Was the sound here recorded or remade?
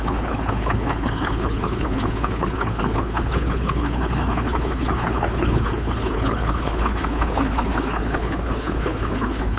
remade